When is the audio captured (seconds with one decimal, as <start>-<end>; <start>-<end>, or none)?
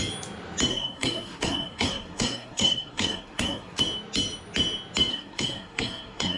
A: 0.0-0.7; 3.8-5.1